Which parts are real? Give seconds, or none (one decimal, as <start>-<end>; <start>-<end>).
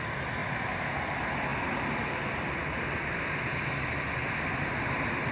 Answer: 0.0-5.3